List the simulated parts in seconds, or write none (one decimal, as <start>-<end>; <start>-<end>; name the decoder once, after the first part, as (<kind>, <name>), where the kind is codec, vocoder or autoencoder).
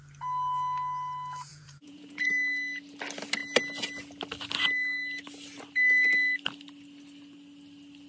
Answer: 1.5-2.3 (vocoder, Vocos)